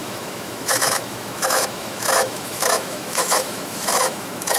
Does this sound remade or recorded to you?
remade